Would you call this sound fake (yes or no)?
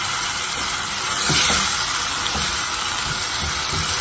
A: no